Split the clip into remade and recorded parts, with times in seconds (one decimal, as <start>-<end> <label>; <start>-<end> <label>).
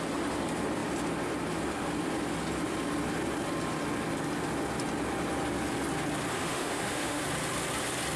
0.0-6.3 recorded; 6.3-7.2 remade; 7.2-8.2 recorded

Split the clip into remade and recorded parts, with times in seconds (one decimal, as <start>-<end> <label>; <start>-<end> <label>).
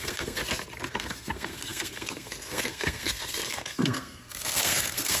0.0-0.4 remade; 0.4-0.9 recorded; 0.9-5.2 remade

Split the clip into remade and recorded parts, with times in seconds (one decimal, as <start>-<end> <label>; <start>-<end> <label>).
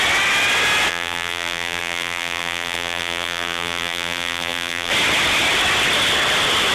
0.0-0.9 recorded; 0.9-4.9 remade; 4.9-6.7 recorded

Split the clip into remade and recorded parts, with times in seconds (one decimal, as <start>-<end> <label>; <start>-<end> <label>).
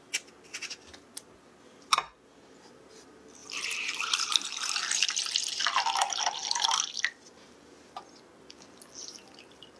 0.0-3.4 recorded; 3.4-5.6 remade; 5.6-9.8 recorded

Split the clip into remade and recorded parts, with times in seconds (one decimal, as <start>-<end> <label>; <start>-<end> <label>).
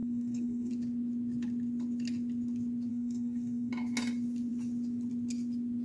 0.0-0.7 remade; 0.7-2.9 recorded; 2.9-3.7 remade; 3.7-5.8 recorded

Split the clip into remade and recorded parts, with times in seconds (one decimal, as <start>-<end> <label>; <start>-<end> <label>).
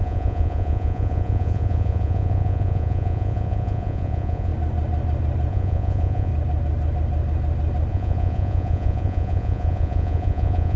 0.0-4.5 remade; 4.5-5.5 recorded; 5.5-6.3 remade; 6.3-7.9 recorded; 7.9-10.8 remade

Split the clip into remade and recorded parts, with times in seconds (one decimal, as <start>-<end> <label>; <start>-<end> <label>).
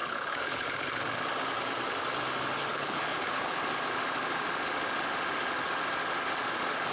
0.0-1.0 remade; 1.0-2.7 recorded; 2.7-3.6 remade; 3.6-6.9 recorded